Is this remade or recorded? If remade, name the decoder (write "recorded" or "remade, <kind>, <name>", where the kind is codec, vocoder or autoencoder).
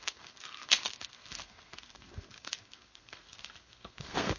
remade, codec, SNAC